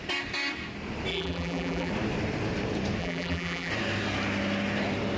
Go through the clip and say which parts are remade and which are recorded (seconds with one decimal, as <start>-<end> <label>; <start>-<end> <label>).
0.0-1.1 recorded; 1.1-1.9 remade; 1.9-3.0 recorded; 3.0-3.7 remade; 3.7-5.2 recorded